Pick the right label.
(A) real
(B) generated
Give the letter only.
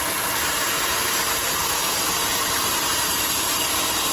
B